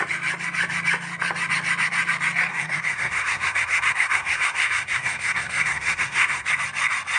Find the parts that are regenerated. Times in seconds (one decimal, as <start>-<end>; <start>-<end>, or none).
2.5-6.5